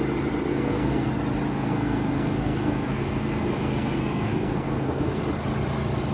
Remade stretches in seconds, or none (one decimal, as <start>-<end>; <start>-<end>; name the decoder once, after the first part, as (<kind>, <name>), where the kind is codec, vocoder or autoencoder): 0.5-1.1 (codec, SNAC); 1.5-5.2

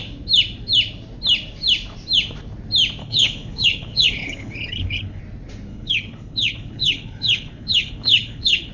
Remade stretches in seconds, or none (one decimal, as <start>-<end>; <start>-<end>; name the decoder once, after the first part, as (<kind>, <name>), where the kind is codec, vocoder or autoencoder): 3.0-5.2 (codec, HILCodec); 5.7-8.7

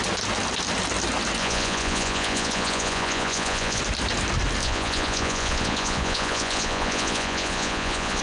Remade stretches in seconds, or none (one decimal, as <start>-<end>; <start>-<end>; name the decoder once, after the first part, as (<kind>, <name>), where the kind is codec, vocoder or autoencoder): 1.4-3.8 (vocoder, Vocos); 4.6-8.2

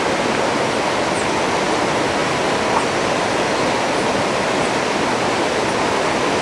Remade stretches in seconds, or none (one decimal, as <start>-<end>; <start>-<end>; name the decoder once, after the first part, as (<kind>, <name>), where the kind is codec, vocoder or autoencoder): none